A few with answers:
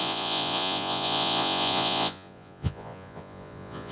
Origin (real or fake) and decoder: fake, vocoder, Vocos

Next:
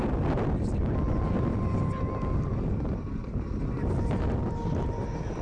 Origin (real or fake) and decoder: real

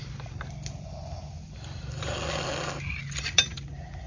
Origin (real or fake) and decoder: real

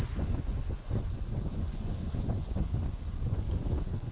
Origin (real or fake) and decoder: fake, vocoder, Vocos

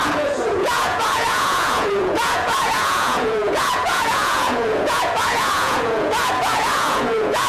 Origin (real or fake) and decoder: fake, vocoder, Vocos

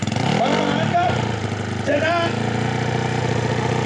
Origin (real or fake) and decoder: real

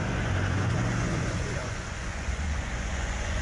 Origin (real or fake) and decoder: fake, vocoder, Vocos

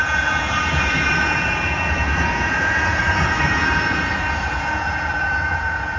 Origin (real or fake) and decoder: fake, vocoder, Vocos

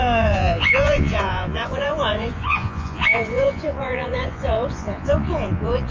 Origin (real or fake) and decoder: fake, vocoder, Vocos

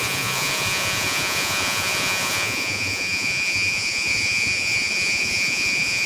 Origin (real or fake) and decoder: fake, vocoder, Vocos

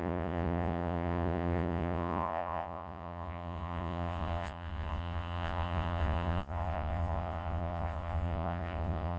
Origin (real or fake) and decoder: fake, vocoder, Vocos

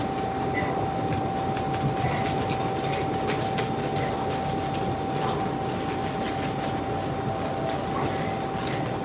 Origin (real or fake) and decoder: real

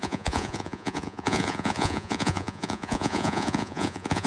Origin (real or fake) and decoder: fake, vocoder, Vocos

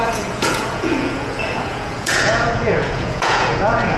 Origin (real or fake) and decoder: fake, vocoder, Vocos